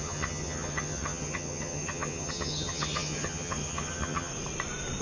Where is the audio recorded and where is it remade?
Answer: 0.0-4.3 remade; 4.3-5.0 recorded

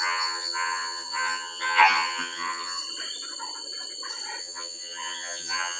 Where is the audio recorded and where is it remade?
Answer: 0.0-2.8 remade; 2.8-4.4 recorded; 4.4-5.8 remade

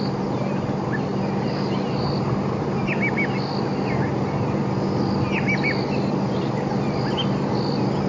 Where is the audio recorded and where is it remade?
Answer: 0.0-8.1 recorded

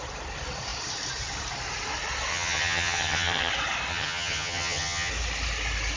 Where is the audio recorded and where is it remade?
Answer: 0.0-2.3 recorded; 2.3-3.5 remade; 3.5-3.9 recorded; 3.9-5.1 remade; 5.1-6.0 recorded

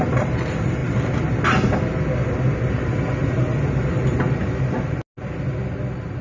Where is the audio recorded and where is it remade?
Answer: 0.0-6.2 recorded

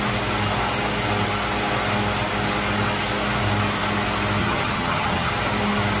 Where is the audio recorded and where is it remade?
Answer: 0.0-4.4 recorded; 4.4-5.3 remade; 5.3-6.0 recorded